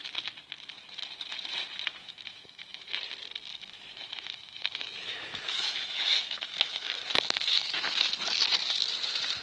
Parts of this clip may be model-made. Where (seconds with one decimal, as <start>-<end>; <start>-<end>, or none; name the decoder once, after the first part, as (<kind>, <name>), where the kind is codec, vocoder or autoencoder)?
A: 2.0-2.9 (autoencoder, DAC-VAE); 3.5-8.1